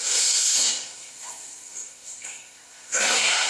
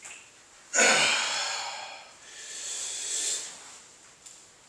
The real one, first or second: second